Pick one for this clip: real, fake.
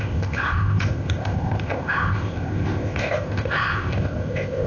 fake